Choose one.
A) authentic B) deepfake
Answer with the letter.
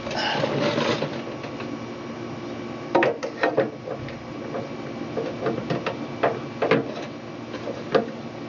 A